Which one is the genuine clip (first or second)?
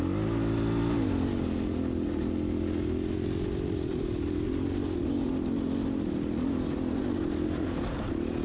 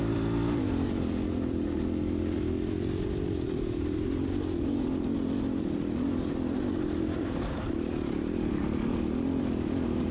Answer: first